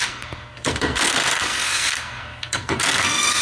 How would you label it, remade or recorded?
remade